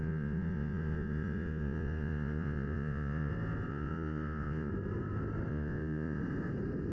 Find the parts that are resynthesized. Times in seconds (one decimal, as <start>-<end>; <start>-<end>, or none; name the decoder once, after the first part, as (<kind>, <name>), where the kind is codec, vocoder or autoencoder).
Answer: 0.0-3.3 (vocoder, Vocos); 3.7-4.7; 5.5-6.2